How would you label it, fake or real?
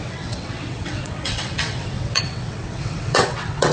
fake